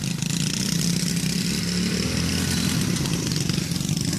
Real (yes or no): yes